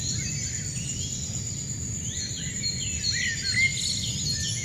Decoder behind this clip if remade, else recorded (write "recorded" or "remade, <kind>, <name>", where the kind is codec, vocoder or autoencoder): recorded